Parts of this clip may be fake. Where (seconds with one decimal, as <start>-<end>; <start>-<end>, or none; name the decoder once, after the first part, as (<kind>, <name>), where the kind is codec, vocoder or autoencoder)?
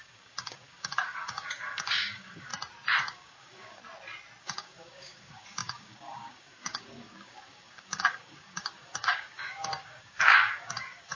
0.0-2.5 (codec, DAC); 3.0-3.8; 4.4-11.2